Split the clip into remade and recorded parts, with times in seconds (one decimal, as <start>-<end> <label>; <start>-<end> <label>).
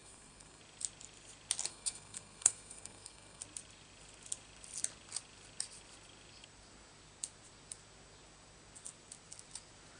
0.0-0.6 remade; 0.6-1.7 recorded; 1.7-3.4 remade; 3.4-10.0 recorded